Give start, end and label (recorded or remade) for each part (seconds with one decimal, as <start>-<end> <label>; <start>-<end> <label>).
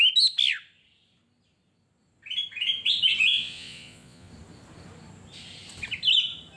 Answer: 0.0-3.3 recorded; 3.3-4.3 remade; 4.3-6.6 recorded